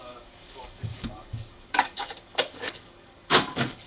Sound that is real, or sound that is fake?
fake